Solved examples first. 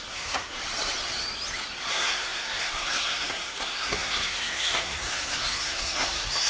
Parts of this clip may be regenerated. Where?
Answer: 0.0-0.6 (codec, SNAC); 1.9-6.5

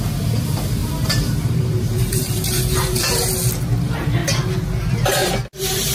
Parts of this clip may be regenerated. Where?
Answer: 0.8-3.3 (vocoder, BigVGAN v2); 5.2-5.9

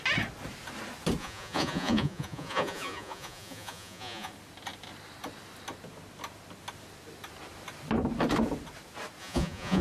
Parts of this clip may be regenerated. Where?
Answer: 1.2-4.3 (vocoder, Vocos); 9.2-9.8

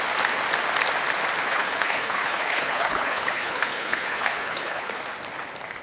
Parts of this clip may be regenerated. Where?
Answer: 1.5-5.0 (codec, HILCodec)

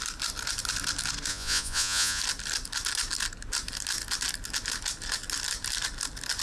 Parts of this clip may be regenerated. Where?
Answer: 1.3-2.2 (vocoder, Vocos)

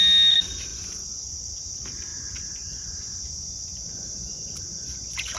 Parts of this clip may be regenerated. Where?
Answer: 0.7-1.4 (vocoder, Vocos); 2.1-5.4

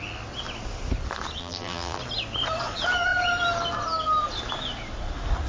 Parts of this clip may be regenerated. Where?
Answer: 1.4-2.0 (vocoder, BigVGAN v2)

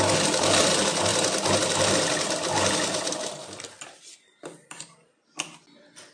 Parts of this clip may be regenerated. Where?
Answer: none